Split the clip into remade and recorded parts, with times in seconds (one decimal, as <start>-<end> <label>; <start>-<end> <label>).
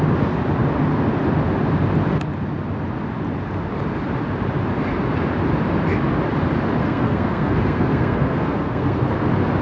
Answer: 0.0-6.8 recorded; 6.8-9.1 remade; 9.1-9.6 recorded